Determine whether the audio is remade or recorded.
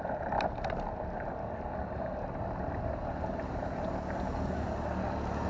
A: recorded